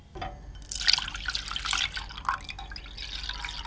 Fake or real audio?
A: real